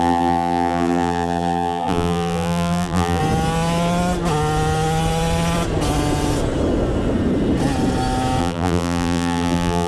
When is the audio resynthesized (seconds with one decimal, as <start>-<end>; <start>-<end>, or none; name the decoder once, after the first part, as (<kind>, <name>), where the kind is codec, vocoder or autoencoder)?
0.0-3.2 (vocoder, BigVGAN v2); 8.4-9.9